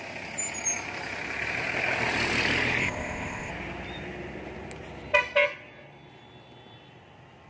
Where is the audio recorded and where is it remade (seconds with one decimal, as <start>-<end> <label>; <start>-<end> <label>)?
0.0-2.8 recorded; 2.8-3.5 remade; 3.5-7.5 recorded